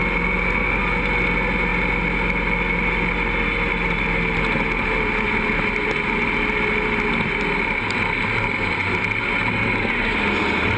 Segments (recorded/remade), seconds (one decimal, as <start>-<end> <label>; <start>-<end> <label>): 0.0-10.8 recorded